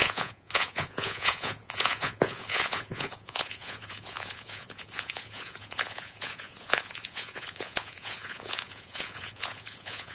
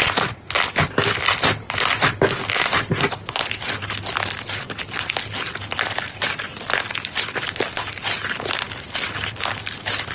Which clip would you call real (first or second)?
second